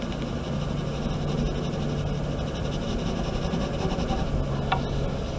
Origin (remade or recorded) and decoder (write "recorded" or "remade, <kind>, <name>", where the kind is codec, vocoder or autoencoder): recorded